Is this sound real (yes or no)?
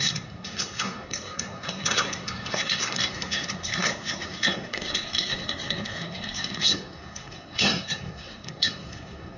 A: no